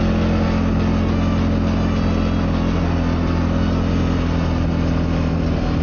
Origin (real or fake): real